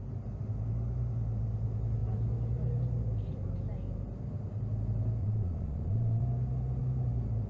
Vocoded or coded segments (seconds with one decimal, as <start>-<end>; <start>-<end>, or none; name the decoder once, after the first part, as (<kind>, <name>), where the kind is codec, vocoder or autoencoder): 5.2-6.2 (vocoder, Vocos)